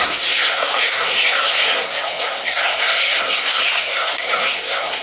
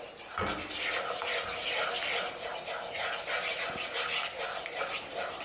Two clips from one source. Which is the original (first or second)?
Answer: second